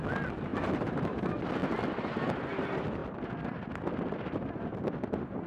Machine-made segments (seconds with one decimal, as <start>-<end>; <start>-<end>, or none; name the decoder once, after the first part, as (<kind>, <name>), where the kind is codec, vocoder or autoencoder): 0.5-1.2 (vocoder, BigVGAN v2)